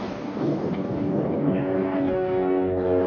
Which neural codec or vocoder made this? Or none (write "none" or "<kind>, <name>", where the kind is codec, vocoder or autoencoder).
codec, DAC